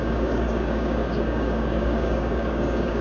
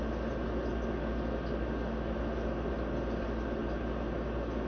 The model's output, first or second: first